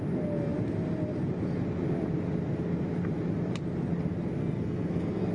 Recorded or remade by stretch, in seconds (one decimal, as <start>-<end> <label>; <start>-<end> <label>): 0.0-4.4 recorded; 4.4-5.3 remade